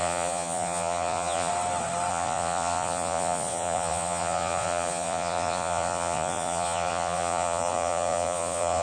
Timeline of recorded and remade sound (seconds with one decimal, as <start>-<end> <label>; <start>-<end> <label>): 0.0-1.5 remade; 1.5-2.1 recorded; 2.1-8.8 remade